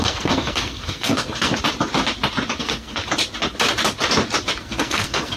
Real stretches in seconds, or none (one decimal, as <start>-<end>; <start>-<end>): 1.5-2.6; 3.0-4.6